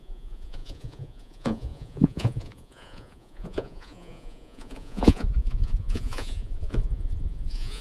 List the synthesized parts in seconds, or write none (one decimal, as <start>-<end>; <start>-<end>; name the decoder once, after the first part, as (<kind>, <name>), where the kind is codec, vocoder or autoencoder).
0.0-7.8 (vocoder, Vocos)